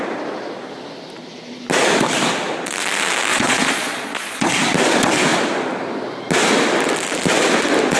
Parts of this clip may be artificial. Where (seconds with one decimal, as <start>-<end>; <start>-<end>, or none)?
3.3-4.5